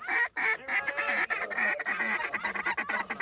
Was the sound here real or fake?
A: real